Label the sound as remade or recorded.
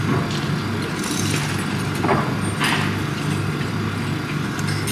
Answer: recorded